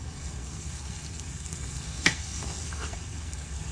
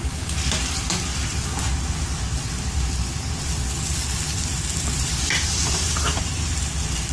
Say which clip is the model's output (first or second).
first